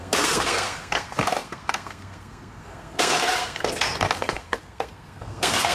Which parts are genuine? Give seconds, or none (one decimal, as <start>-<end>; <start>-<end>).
none